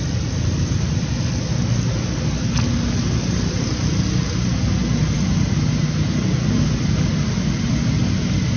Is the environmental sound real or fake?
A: real